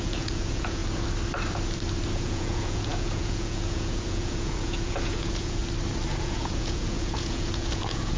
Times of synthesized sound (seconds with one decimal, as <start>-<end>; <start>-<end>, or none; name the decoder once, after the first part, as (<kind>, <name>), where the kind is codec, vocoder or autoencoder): 0.0-0.8 (vocoder, Vocos); 2.1-5.6; 6.1-8.2

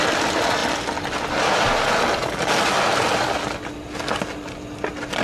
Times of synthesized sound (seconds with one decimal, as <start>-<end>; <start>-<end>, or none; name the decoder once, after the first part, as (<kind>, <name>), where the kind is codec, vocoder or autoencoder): none